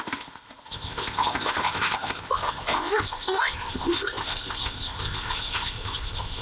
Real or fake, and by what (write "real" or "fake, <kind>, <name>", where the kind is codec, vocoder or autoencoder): fake, codec, ZipCodec